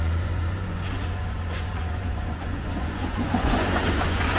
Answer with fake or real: fake